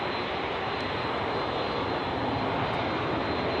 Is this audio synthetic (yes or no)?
no